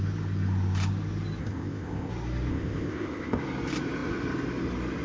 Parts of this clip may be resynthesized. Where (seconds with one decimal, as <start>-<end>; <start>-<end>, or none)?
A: 1.4-2.1; 2.5-3.4